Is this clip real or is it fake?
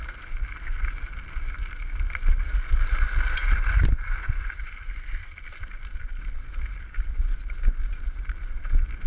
real